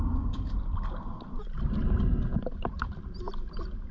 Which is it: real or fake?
real